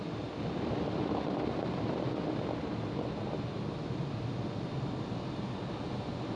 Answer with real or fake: real